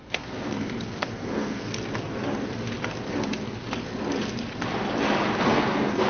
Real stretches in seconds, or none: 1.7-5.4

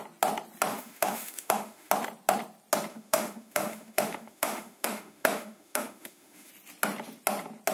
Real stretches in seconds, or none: 0.0-0.7; 1.9-2.9; 6.5-7.7